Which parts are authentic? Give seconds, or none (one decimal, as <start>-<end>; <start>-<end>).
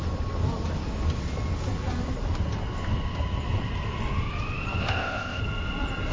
0.0-4.8; 5.4-6.1